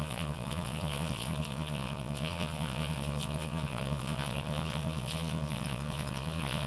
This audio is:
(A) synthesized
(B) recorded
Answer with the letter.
A